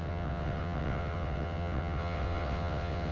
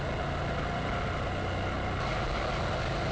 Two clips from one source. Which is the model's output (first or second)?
first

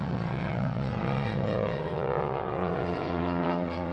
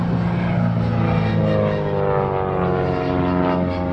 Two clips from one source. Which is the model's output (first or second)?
first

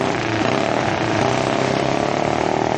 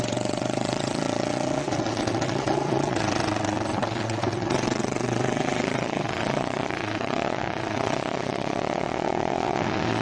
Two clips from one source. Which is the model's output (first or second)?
second